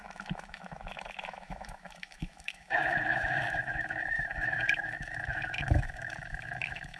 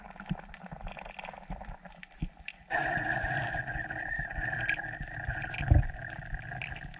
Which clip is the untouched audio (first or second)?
second